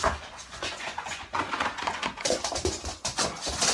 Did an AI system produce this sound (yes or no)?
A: yes